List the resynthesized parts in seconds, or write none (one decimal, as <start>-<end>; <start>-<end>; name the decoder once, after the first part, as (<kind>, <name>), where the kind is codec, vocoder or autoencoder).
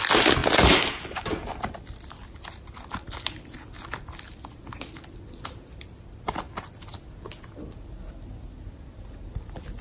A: none